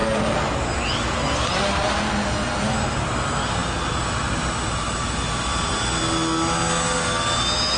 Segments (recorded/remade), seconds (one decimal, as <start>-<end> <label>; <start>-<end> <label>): 0.0-7.8 recorded